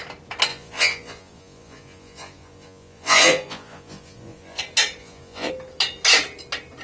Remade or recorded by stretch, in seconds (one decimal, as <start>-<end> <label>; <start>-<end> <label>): 0.0-0.5 recorded; 0.5-4.6 remade; 4.6-5.0 recorded; 5.0-5.5 remade; 5.5-6.8 recorded